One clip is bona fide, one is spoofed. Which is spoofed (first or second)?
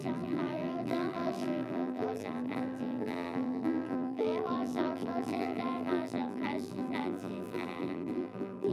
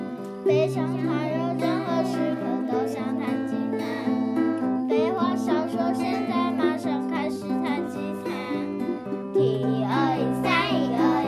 first